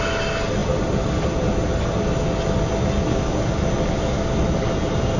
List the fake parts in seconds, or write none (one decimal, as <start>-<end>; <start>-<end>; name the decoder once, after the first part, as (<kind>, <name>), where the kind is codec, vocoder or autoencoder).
none